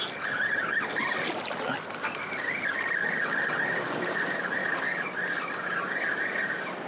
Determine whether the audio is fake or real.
real